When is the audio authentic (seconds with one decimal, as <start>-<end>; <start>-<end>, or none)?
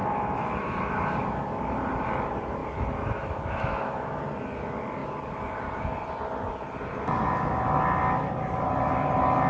0.9-2.6; 4.2-9.5